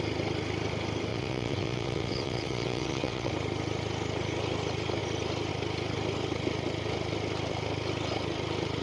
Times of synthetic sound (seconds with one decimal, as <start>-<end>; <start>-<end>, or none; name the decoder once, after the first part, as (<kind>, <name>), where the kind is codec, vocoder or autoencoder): 1.1-3.3 (vocoder, WaveNeXt)